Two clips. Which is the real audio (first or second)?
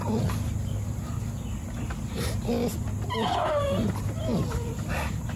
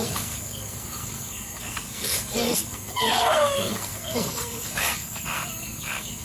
first